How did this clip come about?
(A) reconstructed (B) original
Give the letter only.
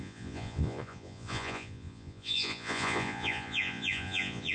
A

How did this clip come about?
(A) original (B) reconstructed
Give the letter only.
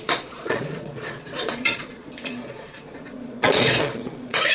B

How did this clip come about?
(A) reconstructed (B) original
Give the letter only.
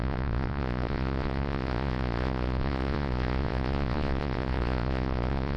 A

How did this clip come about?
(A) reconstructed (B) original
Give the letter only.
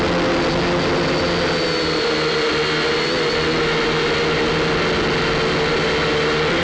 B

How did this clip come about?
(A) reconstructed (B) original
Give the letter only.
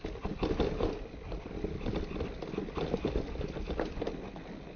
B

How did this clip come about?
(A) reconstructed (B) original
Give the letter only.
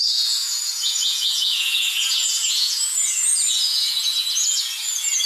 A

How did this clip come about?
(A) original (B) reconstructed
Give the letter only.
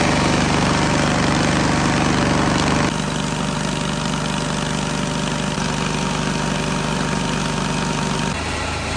A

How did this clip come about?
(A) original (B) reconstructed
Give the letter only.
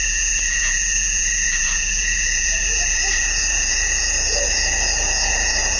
B